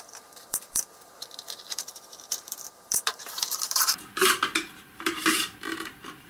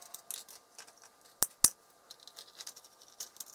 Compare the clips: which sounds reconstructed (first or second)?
first